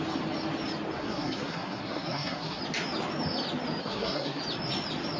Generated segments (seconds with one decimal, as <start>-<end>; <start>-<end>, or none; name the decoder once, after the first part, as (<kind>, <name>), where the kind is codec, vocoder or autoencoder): 1.0-2.6 (codec, SNAC); 3.8-4.4